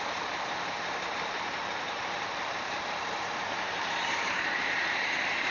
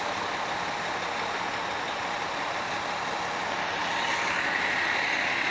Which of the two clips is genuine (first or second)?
second